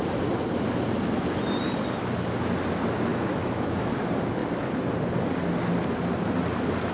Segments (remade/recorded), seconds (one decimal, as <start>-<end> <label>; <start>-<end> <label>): 0.0-3.1 recorded; 3.1-3.9 remade; 3.9-6.9 recorded